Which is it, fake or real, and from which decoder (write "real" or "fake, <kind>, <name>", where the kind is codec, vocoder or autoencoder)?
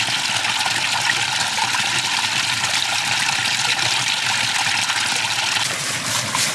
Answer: real